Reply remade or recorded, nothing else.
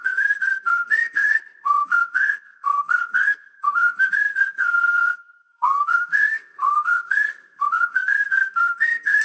remade